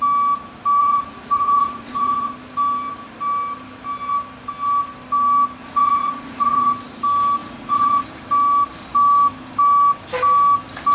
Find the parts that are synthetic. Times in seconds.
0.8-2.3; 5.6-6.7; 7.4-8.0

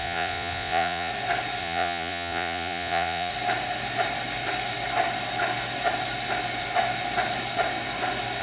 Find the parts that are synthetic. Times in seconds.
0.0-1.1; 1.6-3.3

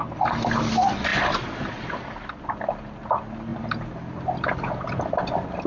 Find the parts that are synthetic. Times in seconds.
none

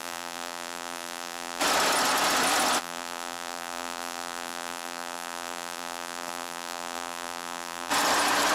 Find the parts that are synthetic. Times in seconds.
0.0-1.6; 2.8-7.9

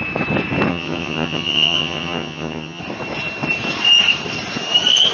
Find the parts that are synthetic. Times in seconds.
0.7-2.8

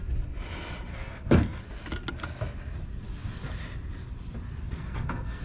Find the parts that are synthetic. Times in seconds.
0.9-1.6; 4.6-5.4